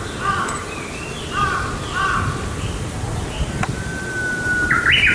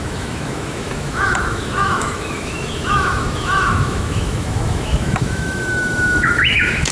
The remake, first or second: second